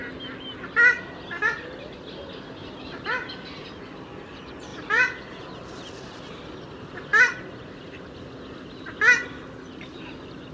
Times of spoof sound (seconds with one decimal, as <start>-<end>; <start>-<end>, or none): 2.6-3.1; 4.7-5.4; 7.1-7.8